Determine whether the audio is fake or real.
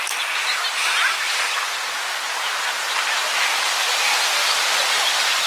real